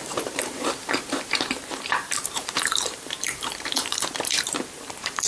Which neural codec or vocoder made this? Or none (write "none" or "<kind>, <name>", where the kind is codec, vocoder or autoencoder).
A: vocoder, BigVGAN v2